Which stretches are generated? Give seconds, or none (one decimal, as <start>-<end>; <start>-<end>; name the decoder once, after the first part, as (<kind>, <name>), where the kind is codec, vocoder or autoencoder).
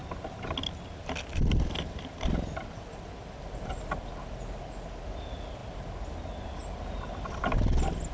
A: none